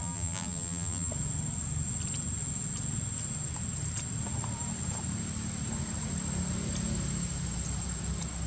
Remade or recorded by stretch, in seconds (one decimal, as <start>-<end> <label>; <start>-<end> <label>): 0.0-1.1 remade; 1.1-8.5 recorded